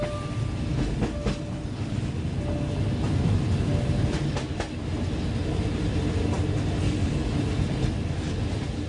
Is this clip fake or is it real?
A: real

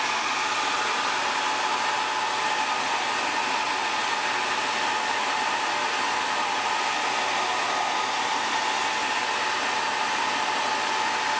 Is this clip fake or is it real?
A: real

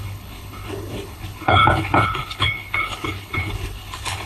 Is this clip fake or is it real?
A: fake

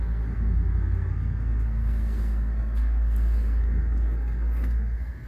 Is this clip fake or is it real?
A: fake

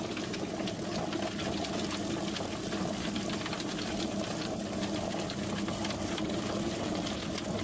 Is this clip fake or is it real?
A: real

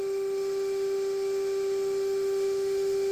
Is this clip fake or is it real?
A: fake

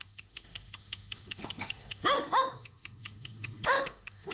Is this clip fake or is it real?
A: fake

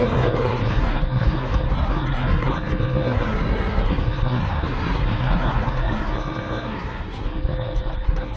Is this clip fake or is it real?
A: fake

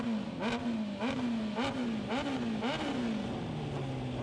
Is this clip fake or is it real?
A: real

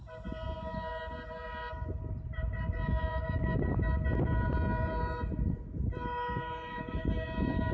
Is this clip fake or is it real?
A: real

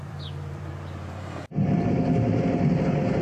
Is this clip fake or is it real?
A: fake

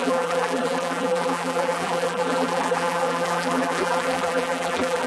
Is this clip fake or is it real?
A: fake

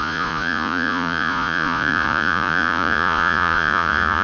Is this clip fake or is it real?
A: fake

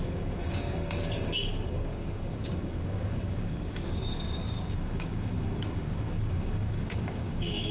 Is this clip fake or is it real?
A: fake